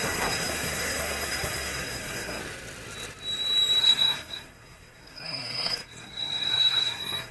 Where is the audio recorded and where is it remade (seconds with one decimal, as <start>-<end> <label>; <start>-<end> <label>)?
0.0-2.4 remade; 2.4-3.8 recorded; 3.8-7.3 remade